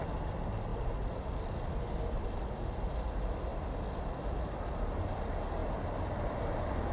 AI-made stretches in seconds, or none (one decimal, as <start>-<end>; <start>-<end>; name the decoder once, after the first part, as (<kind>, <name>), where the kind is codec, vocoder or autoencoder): 0.7-3.1 (vocoder, BigVGAN v2)